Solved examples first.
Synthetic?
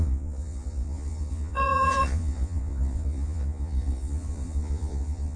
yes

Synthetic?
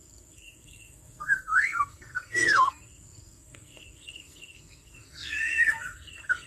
yes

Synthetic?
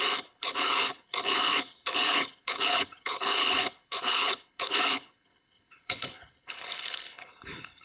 yes